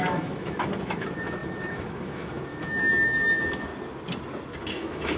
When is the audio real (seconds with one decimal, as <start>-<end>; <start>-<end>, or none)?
3.7-4.6